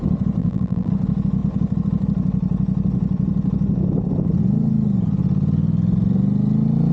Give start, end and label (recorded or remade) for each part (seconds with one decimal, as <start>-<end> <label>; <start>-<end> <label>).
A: 0.0-0.4 recorded; 0.4-0.9 remade; 0.9-6.9 recorded